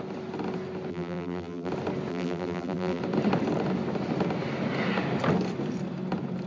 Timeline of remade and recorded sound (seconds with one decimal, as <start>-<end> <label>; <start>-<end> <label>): 0.0-0.9 recorded; 0.9-1.7 remade; 1.7-2.1 recorded; 2.1-3.0 remade; 3.0-6.5 recorded